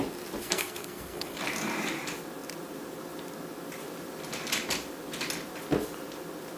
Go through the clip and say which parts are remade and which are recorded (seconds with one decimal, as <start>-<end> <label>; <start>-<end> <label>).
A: 0.0-0.4 recorded; 0.4-1.4 remade; 1.4-6.6 recorded